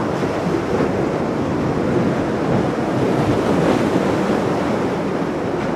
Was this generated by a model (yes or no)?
no